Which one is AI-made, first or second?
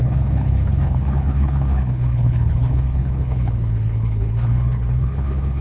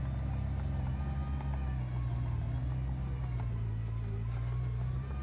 first